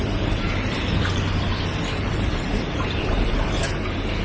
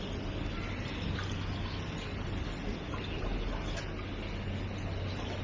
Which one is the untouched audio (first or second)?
second